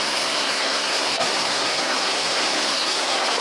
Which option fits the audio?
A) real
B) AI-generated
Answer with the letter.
B